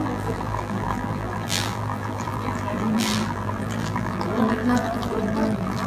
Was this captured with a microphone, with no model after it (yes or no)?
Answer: no